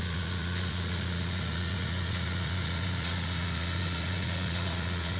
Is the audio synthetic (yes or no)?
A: yes